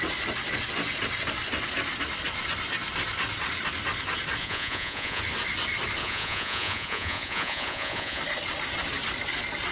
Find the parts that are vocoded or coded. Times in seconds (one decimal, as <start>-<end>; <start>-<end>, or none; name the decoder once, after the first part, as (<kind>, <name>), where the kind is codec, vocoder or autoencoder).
4.4-5.2 (vocoder, Vocos); 6.0-8.2